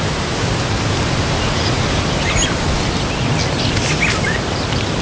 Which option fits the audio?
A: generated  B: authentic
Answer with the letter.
B